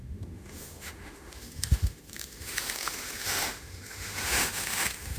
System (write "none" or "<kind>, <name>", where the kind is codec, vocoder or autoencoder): autoencoder, DAC-VAE